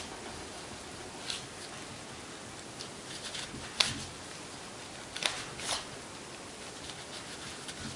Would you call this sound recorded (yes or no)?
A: yes